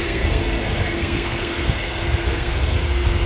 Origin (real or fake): fake